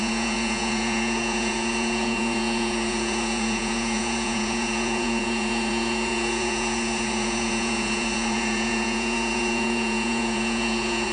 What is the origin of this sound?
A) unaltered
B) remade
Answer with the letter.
B